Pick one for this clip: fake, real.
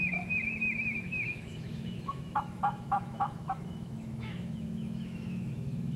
fake